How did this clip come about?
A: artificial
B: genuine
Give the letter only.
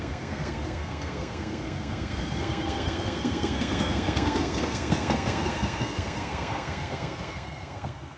A